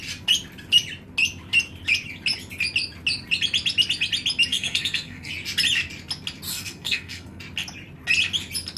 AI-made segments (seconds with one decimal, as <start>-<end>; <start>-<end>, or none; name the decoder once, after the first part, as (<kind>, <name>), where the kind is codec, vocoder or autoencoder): 4.5-5.3 (codec, SNAC); 6.5-7.4